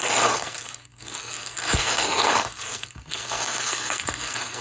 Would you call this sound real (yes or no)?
no